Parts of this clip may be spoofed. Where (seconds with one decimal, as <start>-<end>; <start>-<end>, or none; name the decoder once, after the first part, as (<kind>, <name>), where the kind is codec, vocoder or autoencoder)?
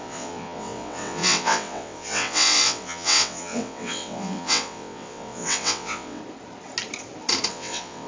0.0-6.2 (vocoder, WaveNeXt); 7.5-8.1